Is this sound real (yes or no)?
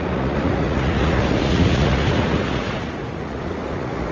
no